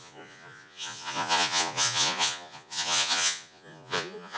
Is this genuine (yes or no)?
no